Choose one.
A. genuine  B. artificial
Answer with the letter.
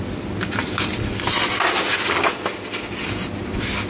A